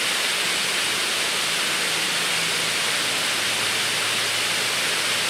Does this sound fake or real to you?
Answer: real